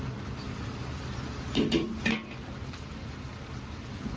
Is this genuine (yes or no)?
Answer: yes